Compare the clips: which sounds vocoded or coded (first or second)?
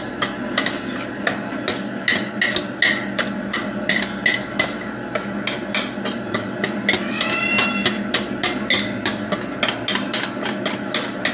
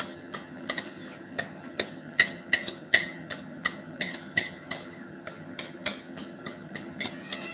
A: second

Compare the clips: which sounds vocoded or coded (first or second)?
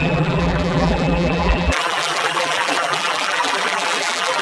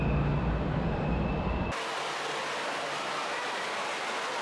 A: first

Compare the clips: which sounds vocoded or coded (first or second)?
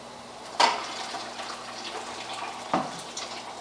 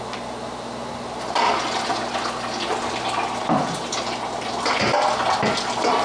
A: first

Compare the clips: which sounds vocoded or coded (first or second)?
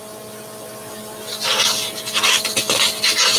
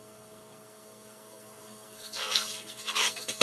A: second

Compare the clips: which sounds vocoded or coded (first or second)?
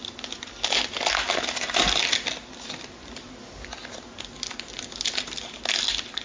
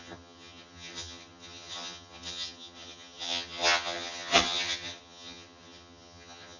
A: second